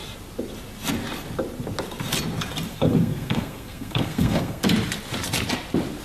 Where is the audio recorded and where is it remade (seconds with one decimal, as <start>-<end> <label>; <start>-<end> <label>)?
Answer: 0.0-2.7 recorded; 2.7-4.6 remade; 4.6-6.0 recorded